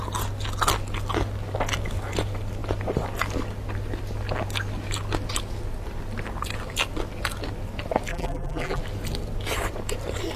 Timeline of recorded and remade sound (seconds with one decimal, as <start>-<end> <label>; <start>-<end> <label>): 0.0-8.1 recorded; 8.1-8.8 remade; 8.8-10.4 recorded